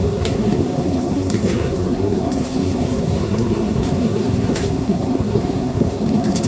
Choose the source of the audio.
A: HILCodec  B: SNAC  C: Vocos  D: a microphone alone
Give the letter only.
B